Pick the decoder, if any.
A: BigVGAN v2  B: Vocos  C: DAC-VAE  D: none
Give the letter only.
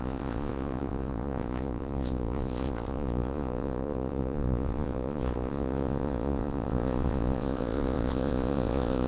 B